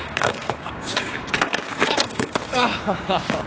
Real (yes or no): no